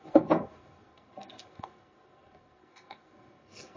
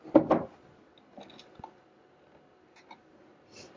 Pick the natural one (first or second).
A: second